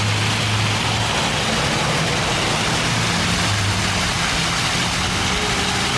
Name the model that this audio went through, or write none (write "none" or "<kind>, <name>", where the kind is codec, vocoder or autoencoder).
none